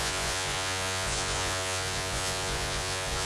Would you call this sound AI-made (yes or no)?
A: yes